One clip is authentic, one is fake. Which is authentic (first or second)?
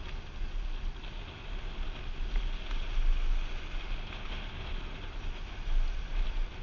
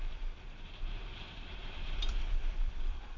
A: first